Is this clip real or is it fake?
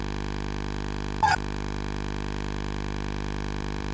fake